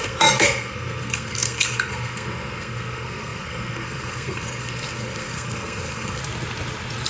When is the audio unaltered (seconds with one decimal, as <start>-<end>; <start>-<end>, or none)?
6.2-7.1